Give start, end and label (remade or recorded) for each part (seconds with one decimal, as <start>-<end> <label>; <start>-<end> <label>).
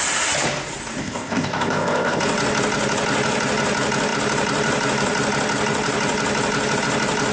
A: 0.0-1.0 recorded; 1.0-2.2 remade; 2.2-7.3 recorded